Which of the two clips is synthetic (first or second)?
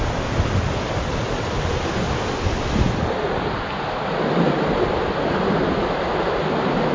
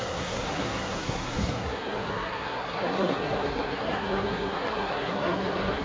second